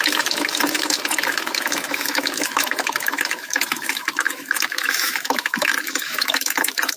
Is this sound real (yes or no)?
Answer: no